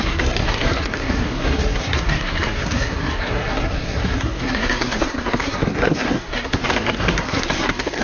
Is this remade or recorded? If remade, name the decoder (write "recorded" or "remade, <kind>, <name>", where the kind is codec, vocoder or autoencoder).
remade, codec, SNAC